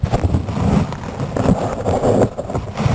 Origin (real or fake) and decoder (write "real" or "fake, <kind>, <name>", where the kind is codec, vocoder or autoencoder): real